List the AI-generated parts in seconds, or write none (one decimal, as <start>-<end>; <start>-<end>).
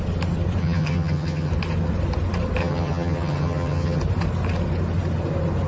0.6-1.5; 2.6-4.0